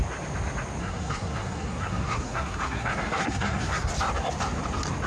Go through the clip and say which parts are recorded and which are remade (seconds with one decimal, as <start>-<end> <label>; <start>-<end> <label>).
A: 0.0-0.8 recorded; 0.8-3.9 remade; 3.9-5.1 recorded